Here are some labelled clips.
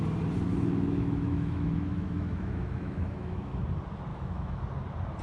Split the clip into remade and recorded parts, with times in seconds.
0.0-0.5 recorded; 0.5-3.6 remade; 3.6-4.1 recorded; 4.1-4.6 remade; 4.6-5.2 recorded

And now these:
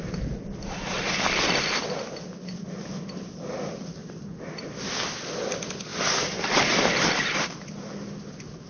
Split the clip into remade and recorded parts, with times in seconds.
0.0-8.7 recorded

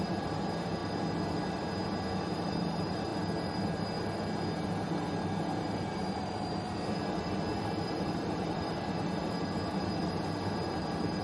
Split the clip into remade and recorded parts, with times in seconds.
0.0-0.8 remade; 0.8-2.2 recorded; 2.2-3.1 remade; 3.1-7.9 recorded; 7.9-11.2 remade

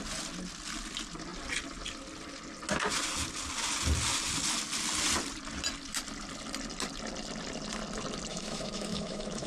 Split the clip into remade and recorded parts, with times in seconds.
0.0-8.3 recorded; 8.3-9.5 remade

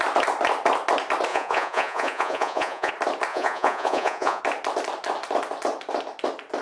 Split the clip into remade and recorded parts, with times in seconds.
0.0-1.3 recorded; 1.3-2.9 remade; 2.9-3.3 recorded; 3.3-4.4 remade; 4.4-6.6 recorded

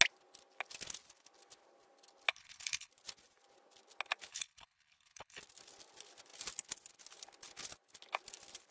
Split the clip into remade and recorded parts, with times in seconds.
0.0-2.3 recorded; 2.3-2.9 remade; 2.9-4.3 recorded; 4.3-5.4 remade; 5.4-8.7 recorded

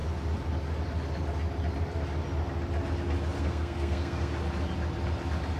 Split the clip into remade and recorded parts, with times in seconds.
0.0-3.4 recorded; 3.4-4.3 remade; 4.3-5.6 recorded

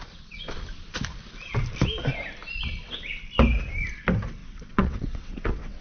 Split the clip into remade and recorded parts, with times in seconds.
0.0-4.4 recorded; 4.4-5.8 remade